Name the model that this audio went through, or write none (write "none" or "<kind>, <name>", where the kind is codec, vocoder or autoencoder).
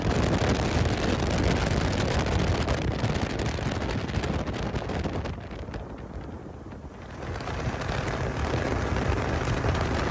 none